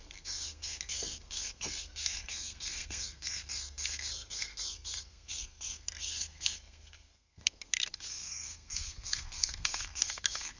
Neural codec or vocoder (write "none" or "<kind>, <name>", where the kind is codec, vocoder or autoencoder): codec, SNAC